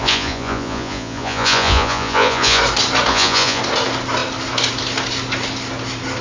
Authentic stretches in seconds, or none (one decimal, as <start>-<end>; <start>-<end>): 2.6-3.1; 3.6-6.2